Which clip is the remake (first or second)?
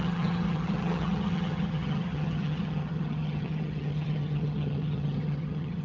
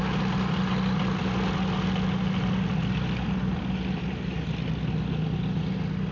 first